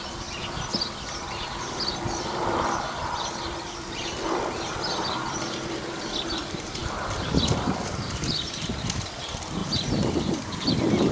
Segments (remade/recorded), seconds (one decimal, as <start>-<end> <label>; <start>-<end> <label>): 0.0-0.4 remade; 0.4-4.7 recorded; 4.7-9.6 remade; 9.6-10.7 recorded; 10.7-11.1 remade